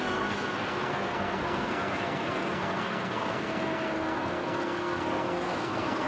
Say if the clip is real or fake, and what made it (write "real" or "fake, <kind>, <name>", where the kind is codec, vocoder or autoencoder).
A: fake, codec, SNAC